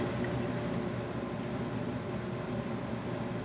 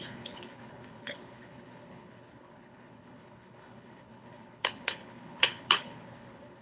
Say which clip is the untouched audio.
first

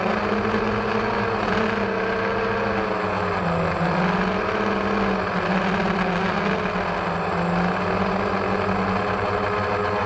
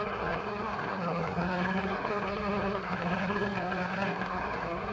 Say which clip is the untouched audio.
first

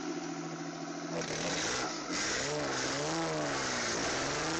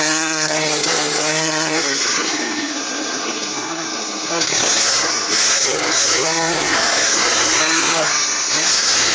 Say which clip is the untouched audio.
first